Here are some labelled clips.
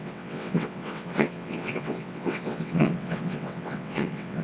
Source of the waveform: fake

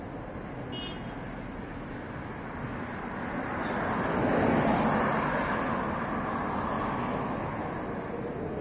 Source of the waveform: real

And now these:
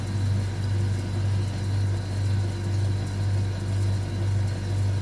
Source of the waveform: real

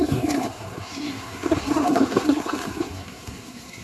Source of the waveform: fake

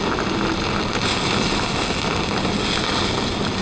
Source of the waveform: real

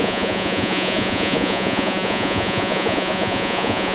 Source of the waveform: fake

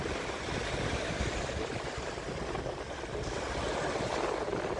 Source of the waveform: real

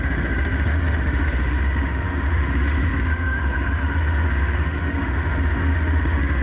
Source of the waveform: fake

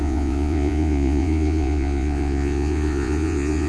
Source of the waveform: fake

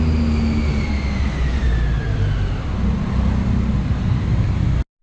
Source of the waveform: real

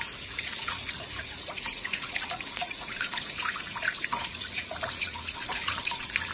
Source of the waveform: fake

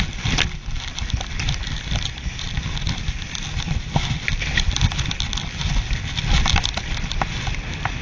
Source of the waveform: real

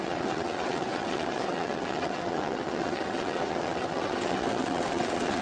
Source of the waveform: fake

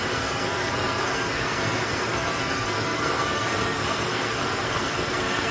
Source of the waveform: fake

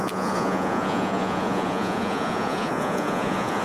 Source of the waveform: fake